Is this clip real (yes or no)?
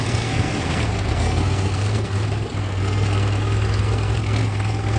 no